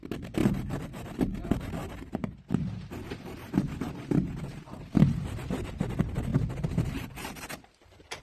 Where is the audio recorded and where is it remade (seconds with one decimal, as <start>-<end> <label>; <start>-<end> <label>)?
0.0-0.4 recorded; 0.4-1.2 remade; 1.2-1.8 recorded; 1.8-2.4 remade; 2.4-6.3 recorded; 6.3-8.2 remade